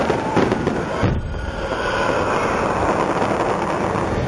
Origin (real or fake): real